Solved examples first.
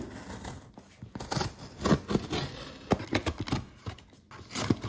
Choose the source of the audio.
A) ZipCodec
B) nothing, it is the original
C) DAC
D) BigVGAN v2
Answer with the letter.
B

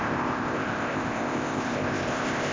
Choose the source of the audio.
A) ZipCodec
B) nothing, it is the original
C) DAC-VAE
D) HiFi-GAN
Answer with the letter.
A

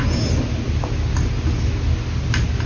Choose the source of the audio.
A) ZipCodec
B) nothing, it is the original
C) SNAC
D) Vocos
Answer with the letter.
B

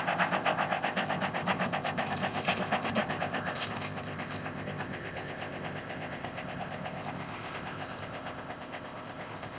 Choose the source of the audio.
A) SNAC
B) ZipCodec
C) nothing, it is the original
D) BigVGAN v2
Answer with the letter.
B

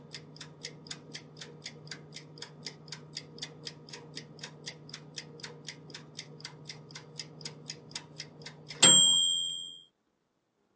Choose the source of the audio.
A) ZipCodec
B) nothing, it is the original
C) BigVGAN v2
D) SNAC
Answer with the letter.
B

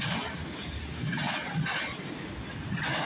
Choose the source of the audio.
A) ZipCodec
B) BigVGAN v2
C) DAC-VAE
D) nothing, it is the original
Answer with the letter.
D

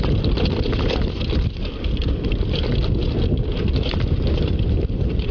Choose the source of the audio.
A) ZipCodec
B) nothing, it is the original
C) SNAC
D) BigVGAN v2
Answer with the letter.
B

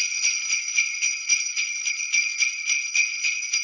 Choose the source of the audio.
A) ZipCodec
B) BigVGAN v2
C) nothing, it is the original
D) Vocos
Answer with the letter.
C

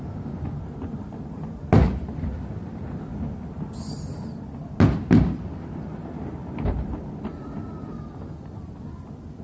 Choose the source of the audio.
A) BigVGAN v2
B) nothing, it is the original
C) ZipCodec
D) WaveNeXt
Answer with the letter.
B